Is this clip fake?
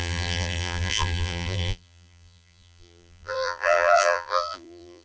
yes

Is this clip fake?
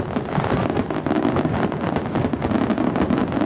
no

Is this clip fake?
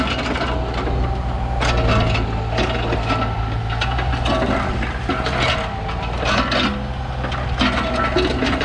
no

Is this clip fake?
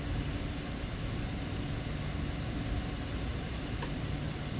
no